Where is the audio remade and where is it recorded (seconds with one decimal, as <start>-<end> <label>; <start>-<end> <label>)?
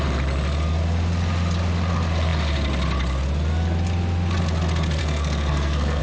0.0-5.0 recorded; 5.0-6.0 remade